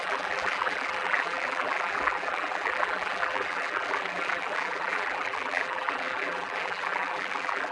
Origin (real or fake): fake